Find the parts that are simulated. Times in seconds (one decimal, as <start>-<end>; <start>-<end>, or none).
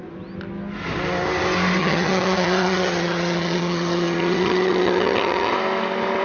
1.8-5.5